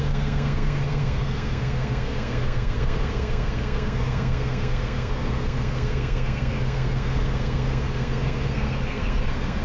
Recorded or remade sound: remade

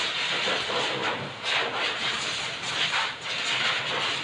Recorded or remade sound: recorded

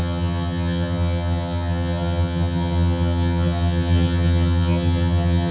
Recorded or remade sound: remade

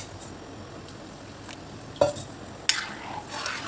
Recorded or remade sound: recorded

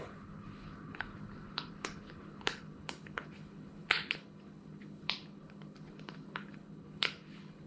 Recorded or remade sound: remade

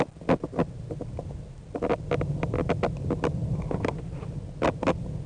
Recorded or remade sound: recorded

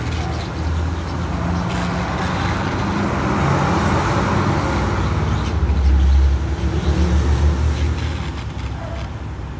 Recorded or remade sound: recorded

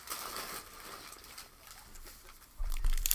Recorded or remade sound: remade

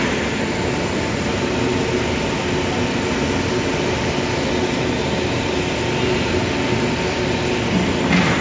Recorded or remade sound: recorded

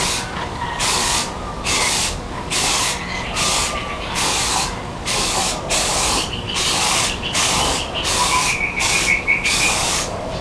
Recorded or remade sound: remade